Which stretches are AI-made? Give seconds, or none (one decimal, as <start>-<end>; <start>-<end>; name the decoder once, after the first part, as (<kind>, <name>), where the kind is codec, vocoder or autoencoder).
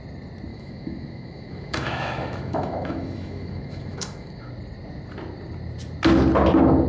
0.5-4.5 (autoencoder, DAC-VAE)